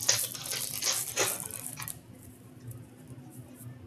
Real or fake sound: real